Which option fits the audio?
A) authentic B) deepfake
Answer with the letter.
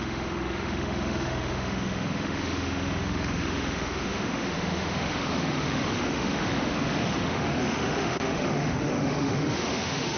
B